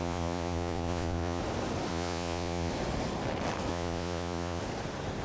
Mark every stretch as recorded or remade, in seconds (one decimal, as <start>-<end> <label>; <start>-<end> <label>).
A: 0.0-1.4 remade; 1.4-1.9 recorded; 1.9-2.7 remade; 2.7-3.7 recorded; 3.7-4.6 remade; 4.6-5.2 recorded